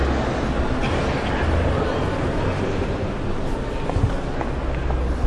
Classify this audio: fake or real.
real